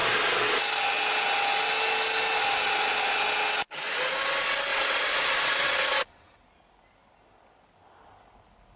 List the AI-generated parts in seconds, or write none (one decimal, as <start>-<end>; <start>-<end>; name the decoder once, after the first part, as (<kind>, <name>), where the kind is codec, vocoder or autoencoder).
4.7-6.3 (vocoder, Vocos)